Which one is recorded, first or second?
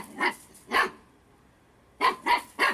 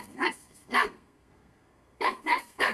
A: first